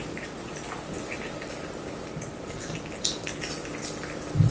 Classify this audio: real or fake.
real